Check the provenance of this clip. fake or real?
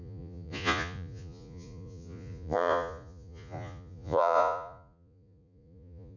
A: fake